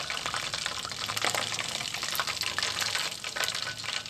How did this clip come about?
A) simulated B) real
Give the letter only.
B